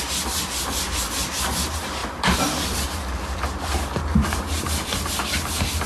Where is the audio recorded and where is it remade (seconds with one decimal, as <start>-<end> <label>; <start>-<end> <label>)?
0.0-5.9 recorded